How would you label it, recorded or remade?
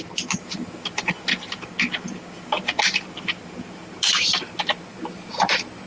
recorded